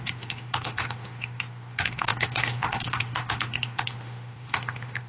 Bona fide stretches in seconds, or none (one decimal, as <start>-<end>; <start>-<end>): none